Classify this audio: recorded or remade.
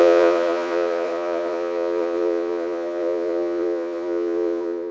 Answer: remade